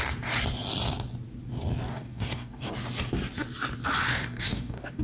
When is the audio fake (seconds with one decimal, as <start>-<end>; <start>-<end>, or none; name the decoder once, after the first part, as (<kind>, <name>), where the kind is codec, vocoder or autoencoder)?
1.9-2.7 (codec, DAC); 4.1-5.0